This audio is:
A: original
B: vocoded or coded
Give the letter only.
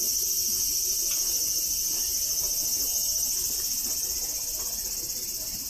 A